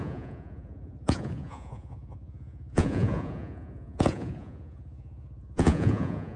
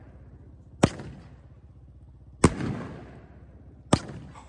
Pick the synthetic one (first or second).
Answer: first